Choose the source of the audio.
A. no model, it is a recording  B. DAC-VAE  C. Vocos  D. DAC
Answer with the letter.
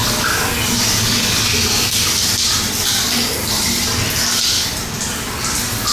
A